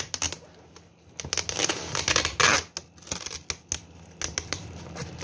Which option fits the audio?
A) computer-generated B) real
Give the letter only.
B